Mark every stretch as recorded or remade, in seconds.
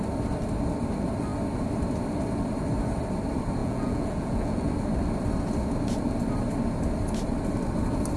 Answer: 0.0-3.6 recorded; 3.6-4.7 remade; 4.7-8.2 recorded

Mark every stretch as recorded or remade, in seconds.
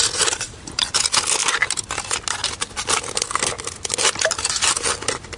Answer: 0.0-5.4 recorded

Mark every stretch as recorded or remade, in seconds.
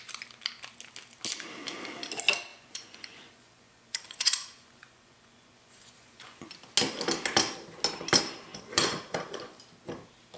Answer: 0.0-2.5 recorded; 2.5-6.4 remade; 6.4-8.5 recorded; 8.5-9.6 remade; 9.6-10.4 recorded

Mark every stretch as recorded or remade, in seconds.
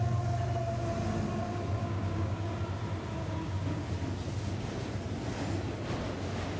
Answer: 0.0-1.8 recorded; 1.8-2.6 remade; 2.6-3.2 recorded; 3.2-3.9 remade; 3.9-6.6 recorded